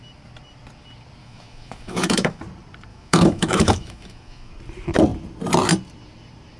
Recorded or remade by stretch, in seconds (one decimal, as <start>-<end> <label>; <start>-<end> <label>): 0.0-1.2 recorded; 1.2-2.4 remade; 2.4-2.9 recorded; 2.9-4.5 remade; 4.5-6.6 recorded